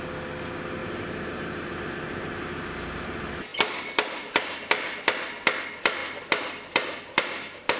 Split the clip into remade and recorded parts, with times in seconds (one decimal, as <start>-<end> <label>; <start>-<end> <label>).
0.0-0.8 recorded; 0.8-1.7 remade; 1.7-7.8 recorded